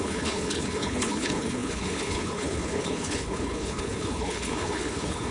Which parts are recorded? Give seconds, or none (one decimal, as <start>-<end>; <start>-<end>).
none